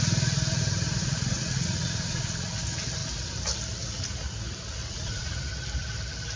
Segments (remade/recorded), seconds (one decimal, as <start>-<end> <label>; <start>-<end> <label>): 0.0-1.0 recorded; 1.0-2.5 remade; 2.5-4.8 recorded; 4.8-5.4 remade; 5.4-6.4 recorded